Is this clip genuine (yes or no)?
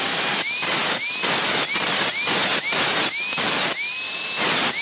yes